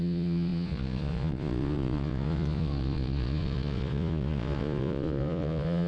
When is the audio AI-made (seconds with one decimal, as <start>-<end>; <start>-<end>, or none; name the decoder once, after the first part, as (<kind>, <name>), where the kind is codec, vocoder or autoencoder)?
0.0-5.9 (vocoder, Vocos)